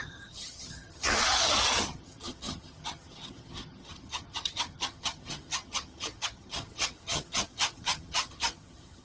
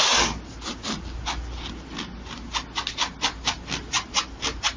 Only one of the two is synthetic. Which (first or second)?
first